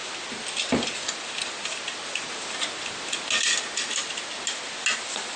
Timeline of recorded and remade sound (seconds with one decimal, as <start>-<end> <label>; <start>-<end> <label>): 0.0-5.4 recorded